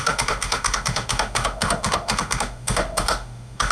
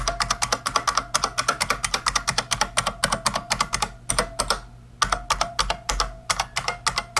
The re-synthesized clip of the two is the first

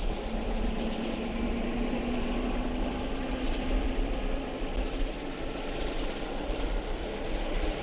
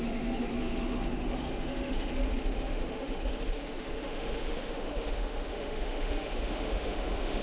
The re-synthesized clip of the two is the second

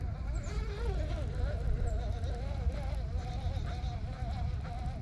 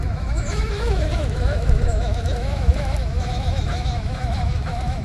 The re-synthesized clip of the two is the second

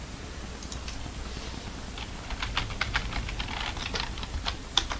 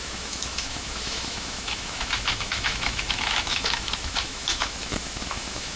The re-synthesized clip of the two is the second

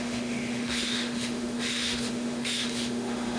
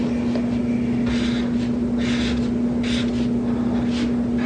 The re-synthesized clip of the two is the first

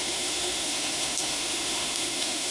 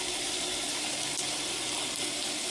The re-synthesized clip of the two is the first